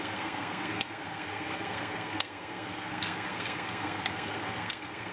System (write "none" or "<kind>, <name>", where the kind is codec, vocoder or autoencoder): codec, SNAC